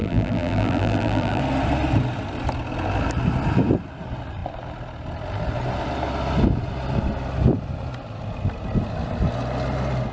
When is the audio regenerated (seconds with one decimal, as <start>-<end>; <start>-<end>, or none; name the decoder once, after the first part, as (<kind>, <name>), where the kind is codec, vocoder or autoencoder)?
0.0-1.4 (vocoder, BigVGAN v2)